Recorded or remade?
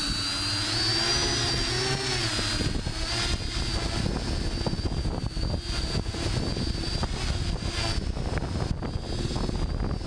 recorded